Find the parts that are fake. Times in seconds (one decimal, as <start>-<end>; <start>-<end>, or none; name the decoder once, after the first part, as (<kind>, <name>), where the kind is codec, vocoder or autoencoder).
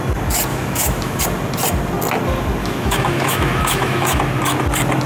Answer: 0.5-1.2 (autoencoder, DAC-VAE); 2.6-4.2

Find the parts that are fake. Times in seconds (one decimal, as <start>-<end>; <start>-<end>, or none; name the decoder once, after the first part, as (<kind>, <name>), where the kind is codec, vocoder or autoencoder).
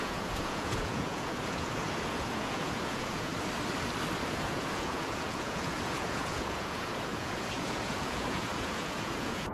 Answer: 0.0-3.3 (vocoder, Vocos); 4.2-9.5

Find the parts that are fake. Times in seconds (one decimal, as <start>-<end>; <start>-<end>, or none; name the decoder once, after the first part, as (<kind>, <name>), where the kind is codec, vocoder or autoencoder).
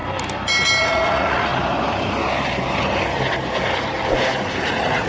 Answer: 0.8-1.5 (vocoder, Vocos); 4.6-5.1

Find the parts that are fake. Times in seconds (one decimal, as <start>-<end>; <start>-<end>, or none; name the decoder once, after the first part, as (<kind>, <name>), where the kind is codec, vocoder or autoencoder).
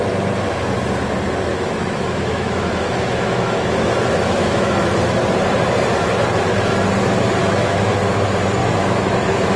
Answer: 1.5-5.0 (autoencoder, DAC-VAE); 7.4-8.1; 8.6-9.6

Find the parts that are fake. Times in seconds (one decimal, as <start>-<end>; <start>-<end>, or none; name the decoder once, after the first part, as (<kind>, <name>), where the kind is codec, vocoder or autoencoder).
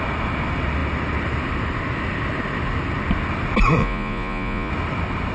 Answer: 3.8-4.7 (vocoder, Vocos)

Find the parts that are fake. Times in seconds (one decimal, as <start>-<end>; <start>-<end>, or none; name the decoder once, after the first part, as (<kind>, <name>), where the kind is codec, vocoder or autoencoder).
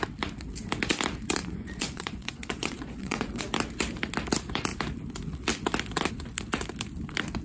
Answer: 1.4-3.4 (vocoder, Vocos)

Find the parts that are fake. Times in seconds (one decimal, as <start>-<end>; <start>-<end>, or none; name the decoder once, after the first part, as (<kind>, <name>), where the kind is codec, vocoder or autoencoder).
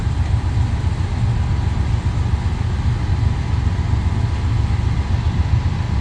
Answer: none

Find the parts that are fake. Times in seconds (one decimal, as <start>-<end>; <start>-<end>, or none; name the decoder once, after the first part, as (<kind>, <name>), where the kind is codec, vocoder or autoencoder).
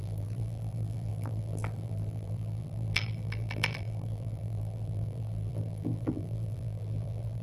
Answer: 0.0-7.4 (vocoder, BigVGAN v2)